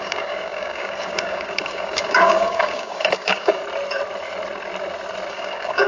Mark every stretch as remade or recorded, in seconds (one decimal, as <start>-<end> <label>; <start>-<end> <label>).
0.0-3.6 remade; 3.6-5.3 recorded; 5.3-5.9 remade